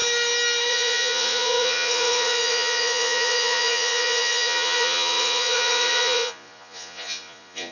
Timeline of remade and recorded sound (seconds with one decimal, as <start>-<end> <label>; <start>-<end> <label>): 0.0-0.7 recorded; 0.7-7.7 remade